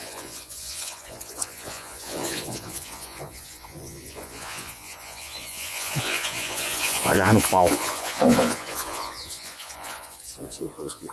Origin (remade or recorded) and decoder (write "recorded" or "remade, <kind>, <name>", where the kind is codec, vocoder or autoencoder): remade, vocoder, Vocos